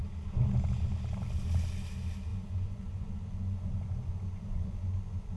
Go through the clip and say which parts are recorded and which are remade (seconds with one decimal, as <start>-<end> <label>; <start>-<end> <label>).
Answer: 0.0-2.3 recorded; 2.3-5.4 remade